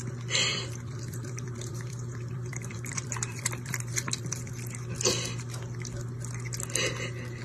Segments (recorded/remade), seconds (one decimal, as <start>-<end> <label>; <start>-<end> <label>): 0.0-0.5 recorded; 0.5-4.5 remade; 4.5-7.4 recorded